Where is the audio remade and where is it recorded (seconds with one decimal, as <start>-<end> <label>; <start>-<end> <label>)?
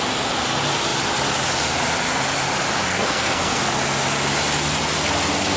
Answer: 0.0-2.9 recorded; 2.9-3.6 remade; 3.6-5.6 recorded